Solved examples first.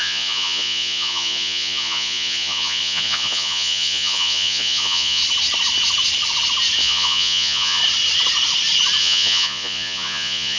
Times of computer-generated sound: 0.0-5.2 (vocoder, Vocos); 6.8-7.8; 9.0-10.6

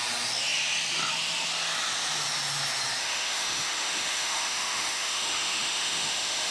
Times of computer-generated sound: 3.0-6.5 (autoencoder, DAC-VAE)

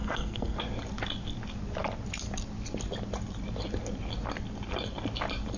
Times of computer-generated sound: 0.0-0.6 (codec, SNAC)

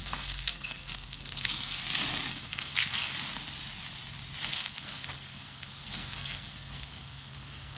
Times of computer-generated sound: 0.0-1.8 (codec, SNAC); 2.3-3.1; 4.5-7.8

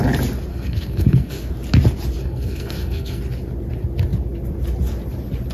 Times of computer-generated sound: 0.5-1.5 (codec, SNAC); 2.2-3.2